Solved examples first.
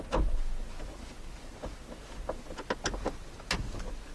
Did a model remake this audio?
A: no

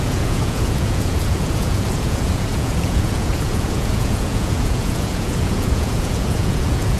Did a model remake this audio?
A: yes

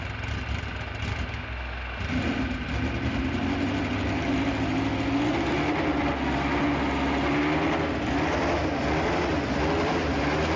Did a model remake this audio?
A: no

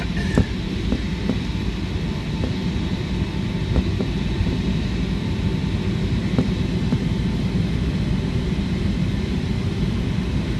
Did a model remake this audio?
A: no